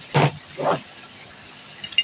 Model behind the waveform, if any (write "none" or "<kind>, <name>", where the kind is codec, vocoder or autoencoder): none